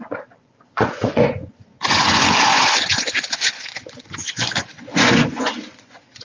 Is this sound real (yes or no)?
no